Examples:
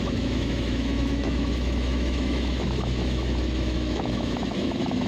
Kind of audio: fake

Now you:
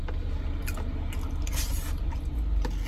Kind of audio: real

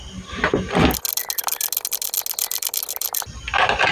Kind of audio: real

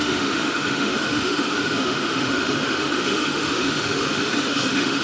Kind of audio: fake